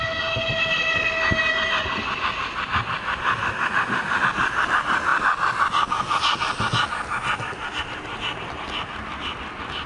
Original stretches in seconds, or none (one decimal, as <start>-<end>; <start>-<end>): 0.0-3.2; 4.2-9.9